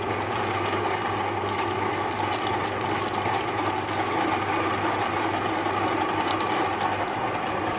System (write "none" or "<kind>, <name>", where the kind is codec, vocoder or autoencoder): none